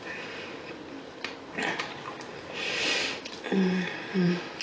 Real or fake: real